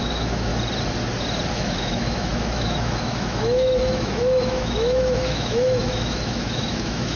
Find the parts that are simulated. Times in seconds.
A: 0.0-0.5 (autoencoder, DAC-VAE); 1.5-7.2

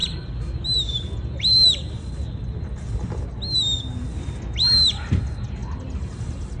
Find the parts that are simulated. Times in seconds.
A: 5.6-6.6 (vocoder, BigVGAN v2)